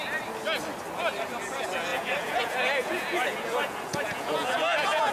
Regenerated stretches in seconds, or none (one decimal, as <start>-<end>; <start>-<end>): 1.9-5.1